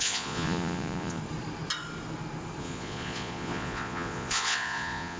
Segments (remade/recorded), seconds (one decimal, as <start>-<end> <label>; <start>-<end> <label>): 0.0-1.2 remade; 1.2-2.6 recorded; 2.6-5.2 remade